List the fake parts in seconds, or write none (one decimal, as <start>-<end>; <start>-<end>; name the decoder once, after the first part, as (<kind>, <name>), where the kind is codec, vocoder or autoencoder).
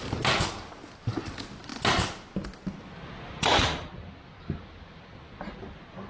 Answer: none